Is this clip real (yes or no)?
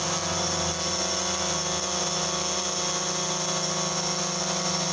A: yes